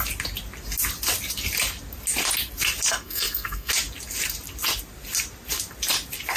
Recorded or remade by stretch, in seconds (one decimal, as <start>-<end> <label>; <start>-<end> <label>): 0.0-2.9 recorded; 2.9-3.7 remade; 3.7-6.4 recorded